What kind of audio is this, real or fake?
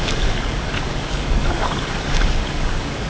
fake